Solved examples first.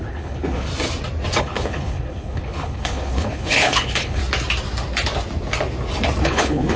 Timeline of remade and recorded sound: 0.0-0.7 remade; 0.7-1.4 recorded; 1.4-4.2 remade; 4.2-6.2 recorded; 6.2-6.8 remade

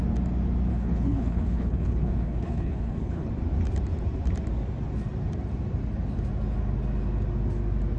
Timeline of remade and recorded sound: 0.0-0.7 recorded; 0.7-3.3 remade; 3.3-8.0 recorded

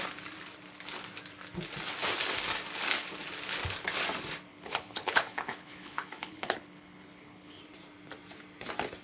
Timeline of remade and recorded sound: 0.0-4.5 recorded; 4.5-7.6 remade; 7.6-9.0 recorded

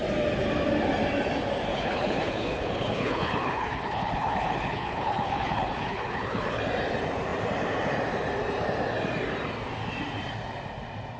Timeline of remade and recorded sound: 0.0-1.7 recorded; 1.7-6.6 remade; 6.6-11.2 recorded

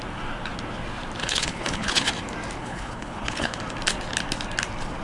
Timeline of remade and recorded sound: 0.0-1.2 recorded; 1.2-2.1 remade; 2.1-2.6 recorded; 2.6-3.6 remade; 3.6-5.0 recorded

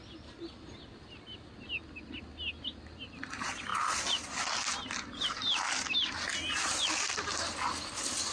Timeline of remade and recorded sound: 0.0-8.3 recorded

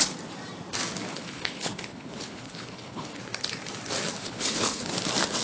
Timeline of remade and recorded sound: 0.0-1.1 recorded; 1.1-3.2 remade; 3.2-4.2 recorded; 4.2-4.9 remade; 4.9-5.4 recorded

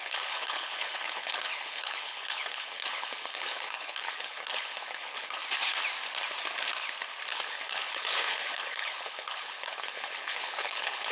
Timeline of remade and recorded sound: 0.0-5.4 remade; 5.4-7.3 recorded; 7.3-11.1 remade